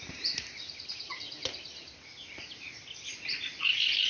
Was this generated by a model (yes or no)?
no